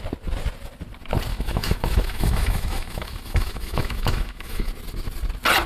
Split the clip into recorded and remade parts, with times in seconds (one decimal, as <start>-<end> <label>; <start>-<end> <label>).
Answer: 0.0-1.3 recorded; 1.3-4.7 remade; 4.7-5.7 recorded